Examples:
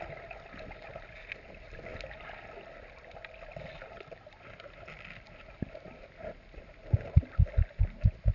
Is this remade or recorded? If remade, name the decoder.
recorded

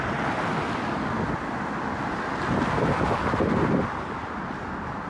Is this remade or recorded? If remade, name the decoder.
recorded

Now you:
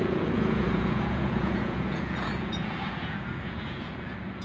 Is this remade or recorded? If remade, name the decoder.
remade, vocoder, Vocos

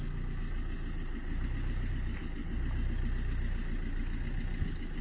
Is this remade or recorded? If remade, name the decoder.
recorded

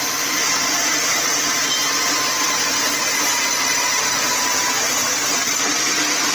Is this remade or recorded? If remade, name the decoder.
recorded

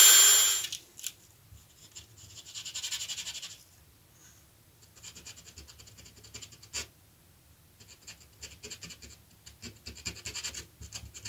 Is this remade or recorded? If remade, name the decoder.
recorded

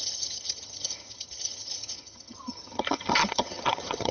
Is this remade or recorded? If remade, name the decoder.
remade, vocoder, HiFi-GAN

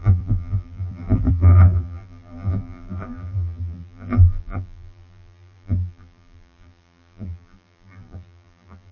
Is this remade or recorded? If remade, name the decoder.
remade, vocoder, BigVGAN v2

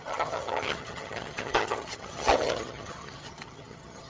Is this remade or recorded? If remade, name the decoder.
remade, vocoder, HiFi-GAN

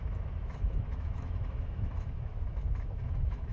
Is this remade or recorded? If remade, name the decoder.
remade, autoencoder, DAC-VAE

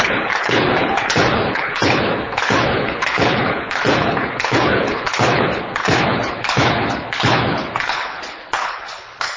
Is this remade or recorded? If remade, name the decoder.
remade, codec, HILCodec